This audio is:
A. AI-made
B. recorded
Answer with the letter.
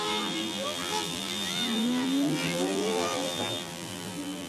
A